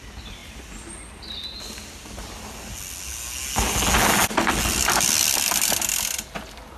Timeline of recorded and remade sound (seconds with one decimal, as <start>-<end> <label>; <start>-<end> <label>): 0.0-6.8 recorded